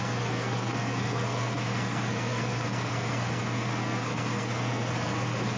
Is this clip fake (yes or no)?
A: yes